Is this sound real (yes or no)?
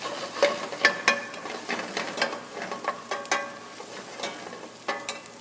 yes